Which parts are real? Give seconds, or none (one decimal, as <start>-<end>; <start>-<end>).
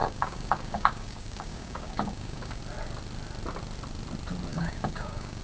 2.6-4.5